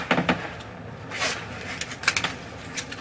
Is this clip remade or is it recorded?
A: recorded